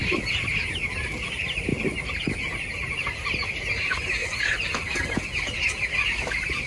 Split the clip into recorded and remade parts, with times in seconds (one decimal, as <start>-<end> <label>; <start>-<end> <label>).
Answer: 0.0-1.7 remade; 1.7-3.5 recorded; 3.5-4.2 remade; 4.2-6.3 recorded; 6.3-6.7 remade